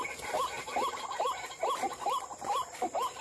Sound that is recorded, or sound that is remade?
recorded